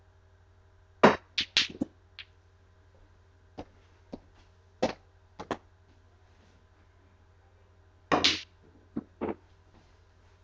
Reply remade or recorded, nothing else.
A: recorded